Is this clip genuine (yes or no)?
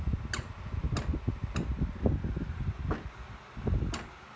yes